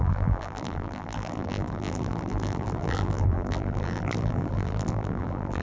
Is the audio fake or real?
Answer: fake